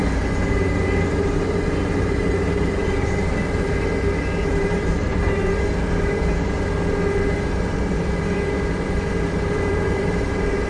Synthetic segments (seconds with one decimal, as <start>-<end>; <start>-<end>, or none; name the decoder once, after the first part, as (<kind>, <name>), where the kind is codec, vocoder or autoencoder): 1.1-3.9 (vocoder, BigVGAN v2); 4.5-5.1; 9.5-10.7